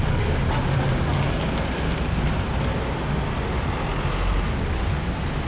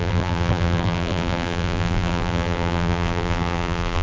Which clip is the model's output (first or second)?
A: second